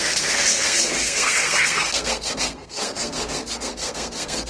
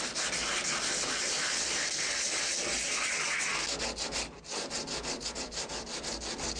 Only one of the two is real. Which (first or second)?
second